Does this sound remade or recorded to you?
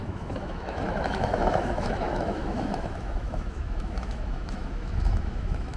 remade